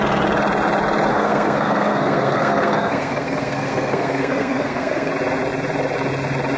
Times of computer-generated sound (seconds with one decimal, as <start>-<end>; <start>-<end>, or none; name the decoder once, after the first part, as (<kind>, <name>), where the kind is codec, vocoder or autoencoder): 1.1-5.1 (codec, SNAC)